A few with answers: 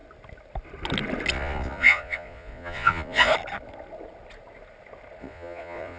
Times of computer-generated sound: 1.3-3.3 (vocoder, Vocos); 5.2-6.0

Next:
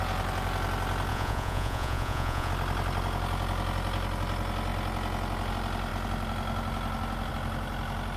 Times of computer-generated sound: 1.1-2.5 (vocoder, Vocos)

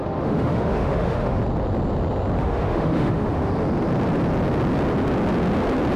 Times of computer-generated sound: 0.0-1.4 (autoencoder, DAC-VAE); 2.4-3.5

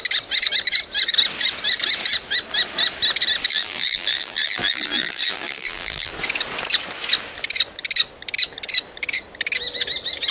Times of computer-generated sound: 3.5-6.1 (vocoder, BigVGAN v2)